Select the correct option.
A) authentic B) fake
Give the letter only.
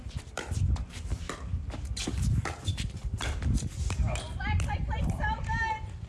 B